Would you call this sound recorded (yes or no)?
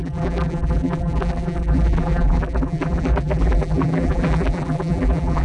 no